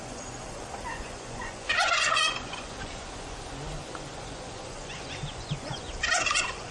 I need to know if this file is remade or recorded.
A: remade